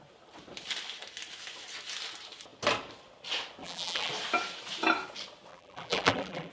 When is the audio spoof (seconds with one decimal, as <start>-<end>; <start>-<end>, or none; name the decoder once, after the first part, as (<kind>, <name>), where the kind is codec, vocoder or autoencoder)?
3.6-4.1 (vocoder, BigVGAN v2); 5.5-6.5